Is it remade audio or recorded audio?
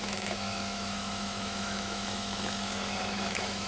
remade